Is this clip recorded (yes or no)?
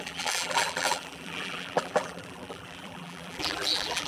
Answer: no